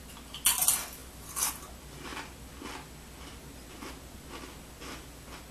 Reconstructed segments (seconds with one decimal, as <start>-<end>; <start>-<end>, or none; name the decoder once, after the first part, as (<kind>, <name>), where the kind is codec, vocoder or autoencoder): 1.0-1.5 (vocoder, BigVGAN v2)